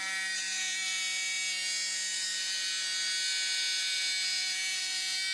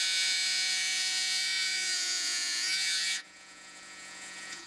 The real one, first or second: first